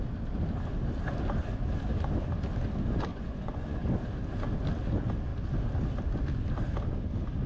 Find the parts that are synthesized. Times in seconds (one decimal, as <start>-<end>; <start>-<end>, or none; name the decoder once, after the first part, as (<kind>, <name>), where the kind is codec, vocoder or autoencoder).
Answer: 3.1-3.8 (vocoder, Vocos)